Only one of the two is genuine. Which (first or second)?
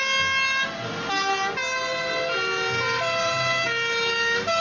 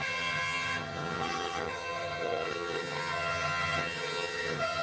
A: first